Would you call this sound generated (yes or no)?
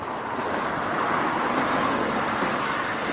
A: no